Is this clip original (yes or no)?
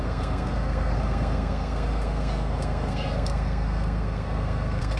no